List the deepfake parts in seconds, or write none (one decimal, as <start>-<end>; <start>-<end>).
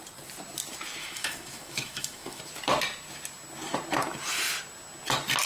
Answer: 1.0-2.4